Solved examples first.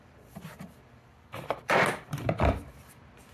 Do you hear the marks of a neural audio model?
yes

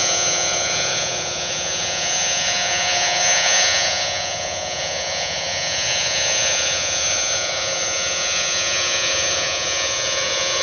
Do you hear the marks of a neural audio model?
yes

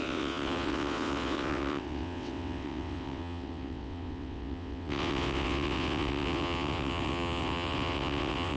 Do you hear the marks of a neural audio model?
yes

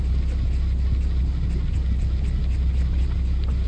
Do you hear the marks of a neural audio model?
no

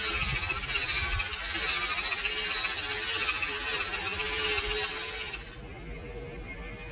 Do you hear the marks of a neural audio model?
no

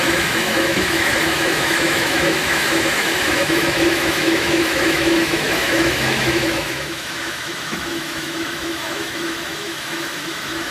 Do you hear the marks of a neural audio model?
yes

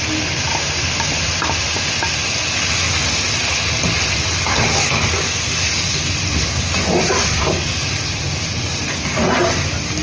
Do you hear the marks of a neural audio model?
no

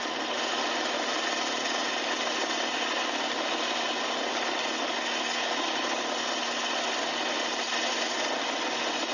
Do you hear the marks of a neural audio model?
no